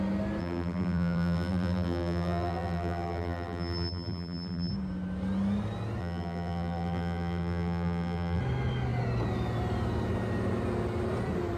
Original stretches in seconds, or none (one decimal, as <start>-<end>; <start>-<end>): 0.0-0.4; 4.7-6.0; 8.4-11.6